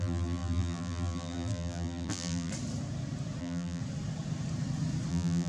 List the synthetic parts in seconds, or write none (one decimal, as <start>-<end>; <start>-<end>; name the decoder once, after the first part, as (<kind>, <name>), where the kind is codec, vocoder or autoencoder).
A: 0.0-2.5 (vocoder, BigVGAN v2); 3.4-3.8; 5.1-5.5